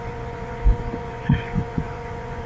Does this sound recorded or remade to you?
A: remade